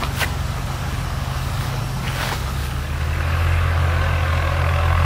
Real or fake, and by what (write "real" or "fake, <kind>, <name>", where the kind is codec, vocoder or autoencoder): fake, codec, DAC